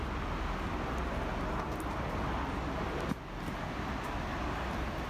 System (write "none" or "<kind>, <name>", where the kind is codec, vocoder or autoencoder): none